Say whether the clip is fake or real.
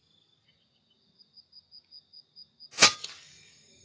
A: real